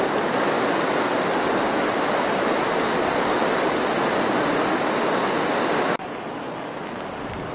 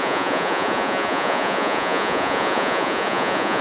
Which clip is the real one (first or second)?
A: first